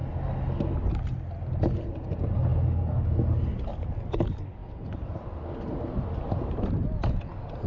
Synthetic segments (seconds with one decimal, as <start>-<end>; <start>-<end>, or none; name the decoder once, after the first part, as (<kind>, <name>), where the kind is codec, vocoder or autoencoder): 4.6-6.7 (vocoder, BigVGAN v2)